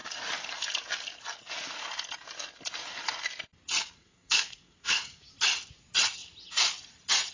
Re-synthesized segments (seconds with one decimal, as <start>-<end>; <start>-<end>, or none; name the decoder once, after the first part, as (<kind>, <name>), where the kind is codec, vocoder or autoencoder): 4.0-5.3 (codec, SNAC)